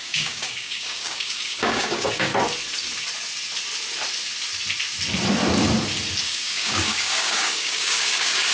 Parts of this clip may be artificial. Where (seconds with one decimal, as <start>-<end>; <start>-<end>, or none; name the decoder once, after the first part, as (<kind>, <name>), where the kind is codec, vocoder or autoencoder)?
0.0-2.3 (codec, DAC); 6.2-8.5

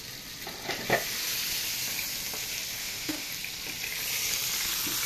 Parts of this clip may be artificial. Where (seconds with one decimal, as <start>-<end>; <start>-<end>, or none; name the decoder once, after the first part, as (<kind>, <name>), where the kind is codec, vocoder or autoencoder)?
2.8-3.3 (autoencoder, DAC-VAE)